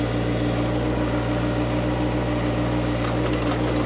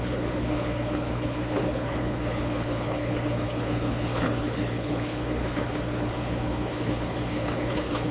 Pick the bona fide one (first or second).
first